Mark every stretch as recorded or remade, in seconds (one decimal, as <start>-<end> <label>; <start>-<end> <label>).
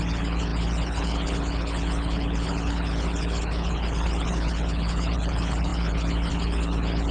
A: 0.0-7.1 remade